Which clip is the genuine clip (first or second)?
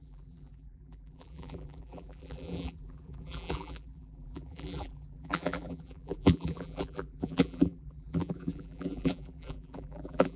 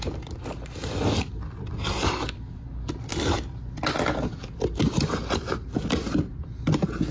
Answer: second